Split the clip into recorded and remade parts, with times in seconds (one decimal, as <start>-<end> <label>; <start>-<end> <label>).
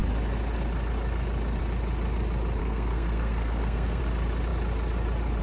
0.0-2.6 recorded; 2.6-4.0 remade; 4.0-5.4 recorded